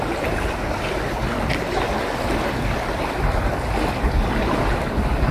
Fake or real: real